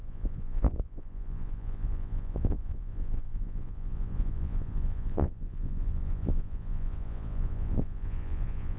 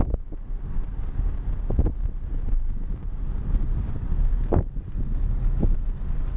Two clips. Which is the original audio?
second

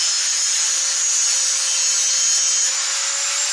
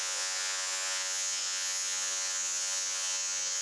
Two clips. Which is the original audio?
first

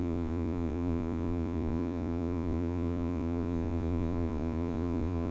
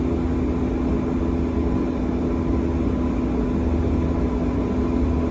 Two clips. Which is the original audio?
second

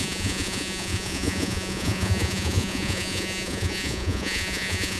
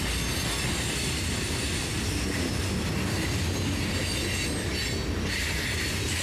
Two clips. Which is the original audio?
second